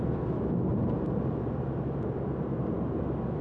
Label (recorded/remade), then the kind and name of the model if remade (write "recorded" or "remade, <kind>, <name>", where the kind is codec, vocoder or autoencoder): recorded